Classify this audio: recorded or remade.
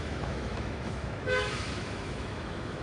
remade